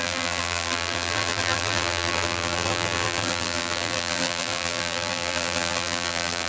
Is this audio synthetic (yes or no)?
yes